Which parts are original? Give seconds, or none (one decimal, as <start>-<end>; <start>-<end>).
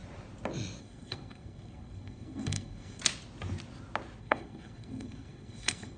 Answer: 0.0-0.8; 3.0-4.2